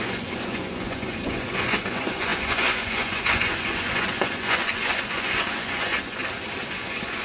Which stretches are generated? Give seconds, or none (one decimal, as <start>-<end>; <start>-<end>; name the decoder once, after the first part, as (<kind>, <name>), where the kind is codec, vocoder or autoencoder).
0.0-6.2 (vocoder, Vocos); 6.7-7.2